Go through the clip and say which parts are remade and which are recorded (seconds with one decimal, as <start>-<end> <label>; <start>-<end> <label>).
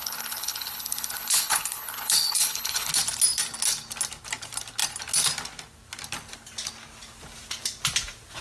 0.0-2.9 remade; 2.9-8.4 recorded